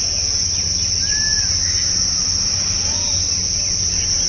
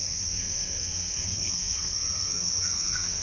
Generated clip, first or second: second